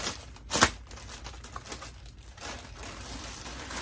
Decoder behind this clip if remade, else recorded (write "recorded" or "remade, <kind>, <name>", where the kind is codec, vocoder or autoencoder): recorded